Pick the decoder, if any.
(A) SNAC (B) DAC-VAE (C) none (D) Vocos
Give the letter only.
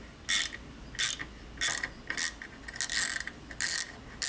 C